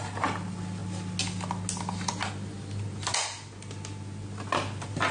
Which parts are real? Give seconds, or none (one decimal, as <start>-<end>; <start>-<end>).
0.0-5.1